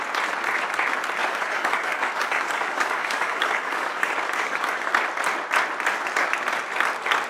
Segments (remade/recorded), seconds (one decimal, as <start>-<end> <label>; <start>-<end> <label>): 0.0-1.2 recorded; 1.2-4.9 remade; 4.9-7.3 recorded